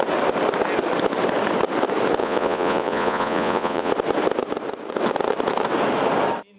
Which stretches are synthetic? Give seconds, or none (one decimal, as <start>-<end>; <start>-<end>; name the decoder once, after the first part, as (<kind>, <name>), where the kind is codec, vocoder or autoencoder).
2.2-3.9 (vocoder, Vocos)